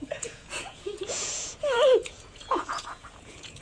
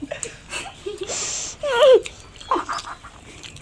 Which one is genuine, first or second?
second